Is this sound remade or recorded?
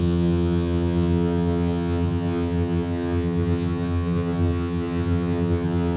remade